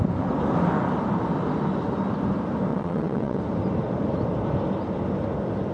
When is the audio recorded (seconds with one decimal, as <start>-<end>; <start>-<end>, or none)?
0.0-2.7; 3.4-5.7